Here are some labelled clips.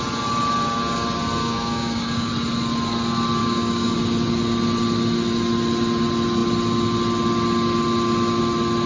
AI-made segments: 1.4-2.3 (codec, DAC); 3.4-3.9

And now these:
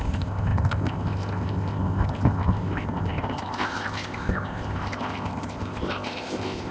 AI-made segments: 0.0-6.7 (codec, ZipCodec)